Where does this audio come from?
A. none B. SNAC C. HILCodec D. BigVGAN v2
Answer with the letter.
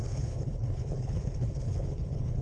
C